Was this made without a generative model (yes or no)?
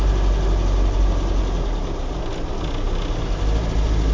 yes